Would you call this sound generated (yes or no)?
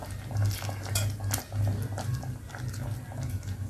no